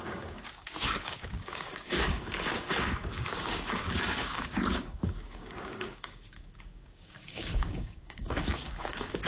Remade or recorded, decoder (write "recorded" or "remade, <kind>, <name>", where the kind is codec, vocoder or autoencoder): remade, codec, DAC